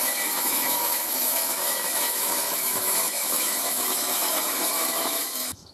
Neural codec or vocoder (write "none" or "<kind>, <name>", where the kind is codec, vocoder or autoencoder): autoencoder, DAC-VAE